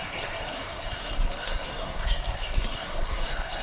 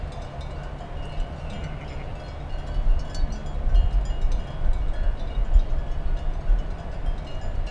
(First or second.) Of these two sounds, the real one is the second